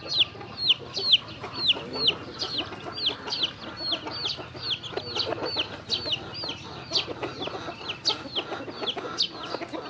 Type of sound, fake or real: real